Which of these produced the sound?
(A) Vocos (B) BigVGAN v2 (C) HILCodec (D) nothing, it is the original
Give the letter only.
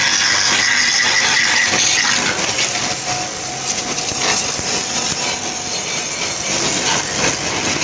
D